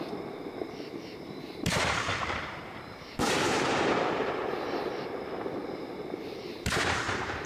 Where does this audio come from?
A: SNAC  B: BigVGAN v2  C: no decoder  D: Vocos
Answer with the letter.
B